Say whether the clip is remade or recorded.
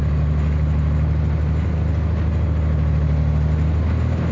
recorded